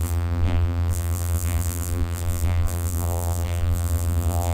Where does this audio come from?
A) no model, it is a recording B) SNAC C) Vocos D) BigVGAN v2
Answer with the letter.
D